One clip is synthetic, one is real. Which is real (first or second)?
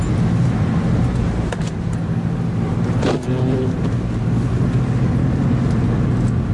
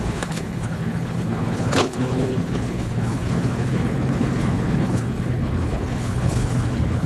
first